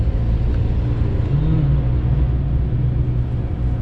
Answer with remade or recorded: recorded